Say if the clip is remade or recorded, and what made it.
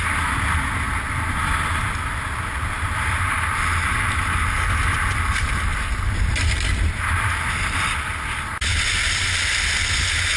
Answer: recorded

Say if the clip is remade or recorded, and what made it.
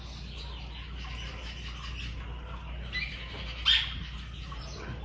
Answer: recorded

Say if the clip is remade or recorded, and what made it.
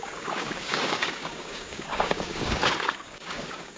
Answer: remade, codec, DAC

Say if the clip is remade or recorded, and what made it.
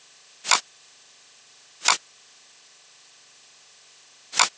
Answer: recorded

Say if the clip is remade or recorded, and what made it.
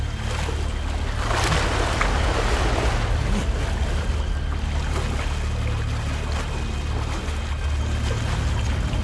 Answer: recorded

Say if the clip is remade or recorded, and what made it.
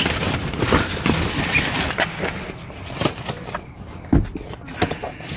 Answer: recorded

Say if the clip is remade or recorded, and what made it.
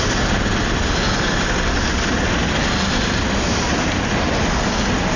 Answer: recorded